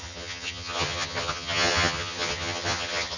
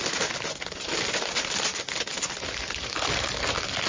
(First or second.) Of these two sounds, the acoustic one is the second